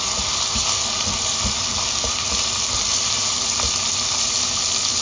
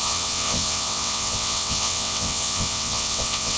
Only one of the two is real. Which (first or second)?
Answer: first